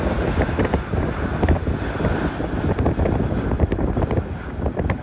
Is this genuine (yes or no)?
yes